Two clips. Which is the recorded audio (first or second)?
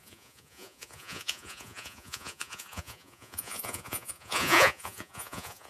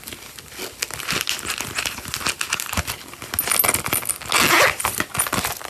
second